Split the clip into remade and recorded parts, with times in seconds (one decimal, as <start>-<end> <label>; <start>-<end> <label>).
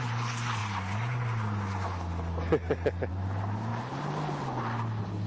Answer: 0.0-3.7 recorded; 3.7-4.6 remade; 4.6-5.3 recorded